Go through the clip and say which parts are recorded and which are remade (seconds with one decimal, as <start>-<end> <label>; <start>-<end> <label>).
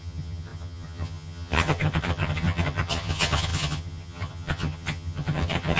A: 0.0-5.8 remade